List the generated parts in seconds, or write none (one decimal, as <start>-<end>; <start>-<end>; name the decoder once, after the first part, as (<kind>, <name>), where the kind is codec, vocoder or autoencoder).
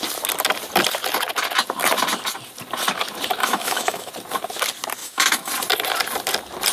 3.4-4.1 (autoencoder, DAC-VAE); 5.0-5.5